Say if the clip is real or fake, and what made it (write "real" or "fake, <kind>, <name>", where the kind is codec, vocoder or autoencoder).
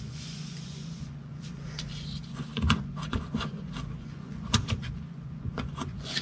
fake, vocoder, Vocos